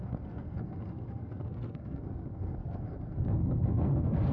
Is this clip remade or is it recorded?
remade